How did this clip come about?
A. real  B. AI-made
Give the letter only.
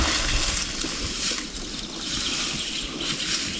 A